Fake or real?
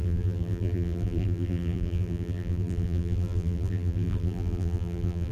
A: fake